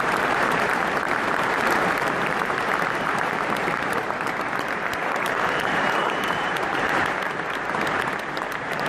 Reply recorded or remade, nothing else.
remade